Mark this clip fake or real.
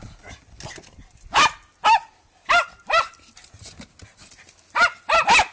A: real